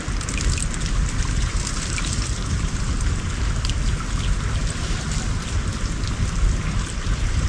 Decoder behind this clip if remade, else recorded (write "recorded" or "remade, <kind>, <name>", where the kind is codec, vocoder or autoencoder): recorded